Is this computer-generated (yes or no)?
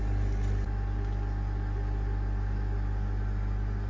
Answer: no